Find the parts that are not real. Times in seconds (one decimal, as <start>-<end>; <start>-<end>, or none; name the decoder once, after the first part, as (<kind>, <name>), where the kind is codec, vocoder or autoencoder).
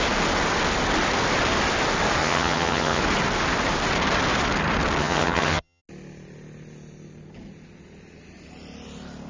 2.2-3.0 (vocoder, HiFi-GAN); 5.0-5.8